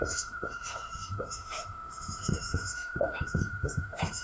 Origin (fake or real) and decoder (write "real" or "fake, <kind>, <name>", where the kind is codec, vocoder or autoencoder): fake, autoencoder, DAC-VAE